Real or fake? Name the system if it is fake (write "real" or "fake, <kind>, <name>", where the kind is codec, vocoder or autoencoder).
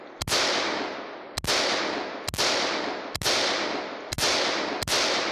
real